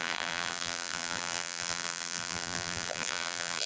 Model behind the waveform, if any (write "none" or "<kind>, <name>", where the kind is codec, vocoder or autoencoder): vocoder, BigVGAN v2